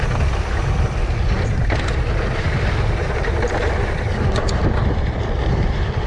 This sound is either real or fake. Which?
fake